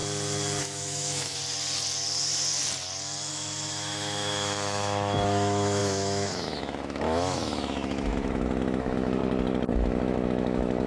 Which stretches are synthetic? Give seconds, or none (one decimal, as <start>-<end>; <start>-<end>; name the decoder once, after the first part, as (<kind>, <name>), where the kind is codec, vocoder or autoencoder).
0.6-1.4 (autoencoder, DAC-VAE); 3.3-9.2; 9.7-10.9